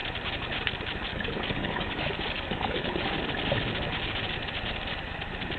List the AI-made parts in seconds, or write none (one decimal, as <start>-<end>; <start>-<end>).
1.1-3.2

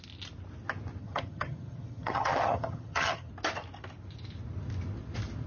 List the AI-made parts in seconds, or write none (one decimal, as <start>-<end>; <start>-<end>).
1.0-3.3

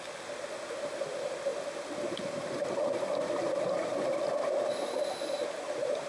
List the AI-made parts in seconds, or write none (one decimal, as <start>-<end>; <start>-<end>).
none

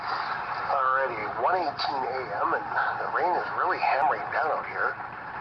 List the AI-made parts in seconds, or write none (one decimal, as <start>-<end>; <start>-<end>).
none

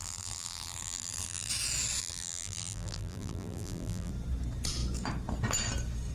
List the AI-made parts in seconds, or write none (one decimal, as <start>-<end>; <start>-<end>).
0.0-1.5; 2.0-4.1

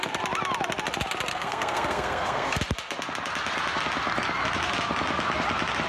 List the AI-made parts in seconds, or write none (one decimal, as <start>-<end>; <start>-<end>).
1.3-2.6

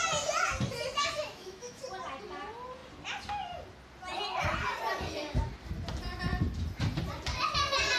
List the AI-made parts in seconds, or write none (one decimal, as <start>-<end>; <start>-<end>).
1.0-1.8

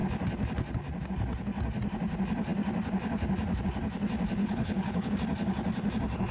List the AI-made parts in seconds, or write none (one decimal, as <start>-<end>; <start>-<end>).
4.4-5.1